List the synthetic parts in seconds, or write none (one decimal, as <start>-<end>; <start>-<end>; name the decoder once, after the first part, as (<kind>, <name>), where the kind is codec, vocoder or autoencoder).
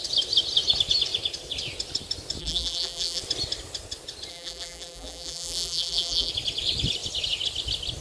2.4-3.2 (vocoder, BigVGAN v2); 4.3-6.3